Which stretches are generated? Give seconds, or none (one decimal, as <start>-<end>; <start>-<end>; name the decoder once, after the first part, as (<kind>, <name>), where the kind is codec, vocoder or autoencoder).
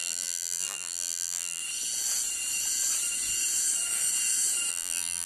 0.0-1.6 (vocoder, BigVGAN v2); 4.7-5.3